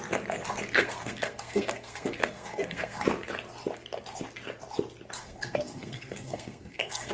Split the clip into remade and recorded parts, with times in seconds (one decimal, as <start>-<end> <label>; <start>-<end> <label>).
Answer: 0.0-0.8 recorded; 0.8-3.0 remade; 3.0-5.2 recorded; 5.2-7.1 remade